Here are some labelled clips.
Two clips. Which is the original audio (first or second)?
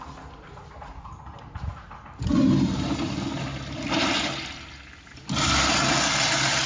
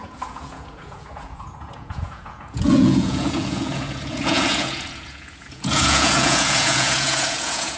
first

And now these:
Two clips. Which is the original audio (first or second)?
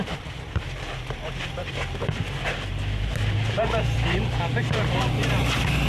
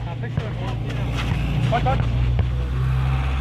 second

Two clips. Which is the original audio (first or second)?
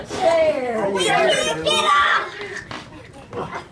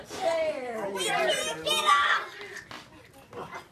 second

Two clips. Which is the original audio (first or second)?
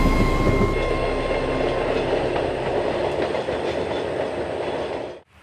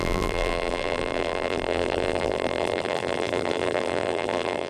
first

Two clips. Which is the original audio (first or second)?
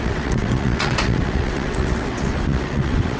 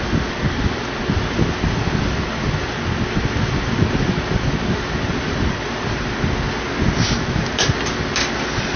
second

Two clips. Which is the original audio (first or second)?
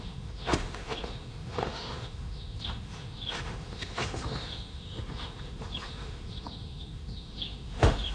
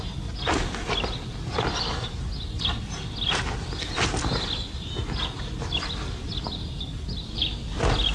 second